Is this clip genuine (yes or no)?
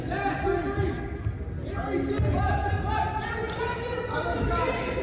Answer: yes